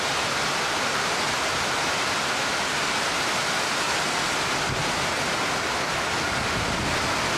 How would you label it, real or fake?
real